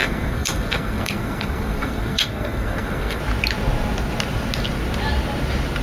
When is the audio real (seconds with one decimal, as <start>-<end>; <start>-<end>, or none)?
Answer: 3.2-5.8

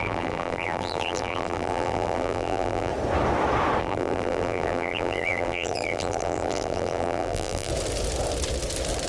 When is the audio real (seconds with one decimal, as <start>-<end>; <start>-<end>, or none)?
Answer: 2.9-3.8; 7.7-9.1

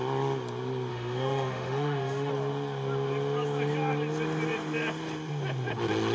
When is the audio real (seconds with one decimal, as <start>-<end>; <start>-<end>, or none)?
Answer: 0.0-0.9; 2.3-6.1